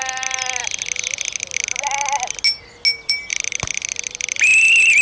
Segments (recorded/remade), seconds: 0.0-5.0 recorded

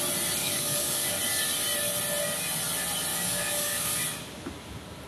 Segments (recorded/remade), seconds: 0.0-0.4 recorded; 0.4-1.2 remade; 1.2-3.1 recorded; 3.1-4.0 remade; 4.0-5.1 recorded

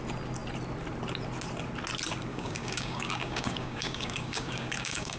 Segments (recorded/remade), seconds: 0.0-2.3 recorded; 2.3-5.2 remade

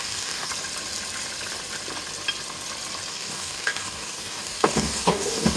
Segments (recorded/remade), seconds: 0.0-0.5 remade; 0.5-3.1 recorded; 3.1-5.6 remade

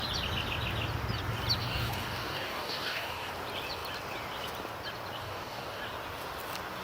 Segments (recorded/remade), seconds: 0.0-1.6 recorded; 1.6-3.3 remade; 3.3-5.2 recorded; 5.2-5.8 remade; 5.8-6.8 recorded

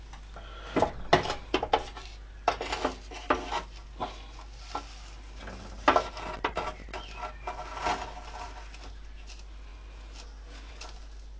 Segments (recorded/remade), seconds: 0.0-11.4 recorded

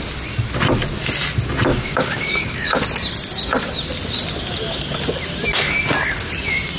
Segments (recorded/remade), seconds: 0.0-1.7 recorded; 1.7-2.8 remade; 2.8-6.8 recorded